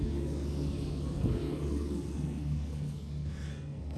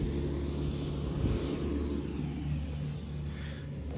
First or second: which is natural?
second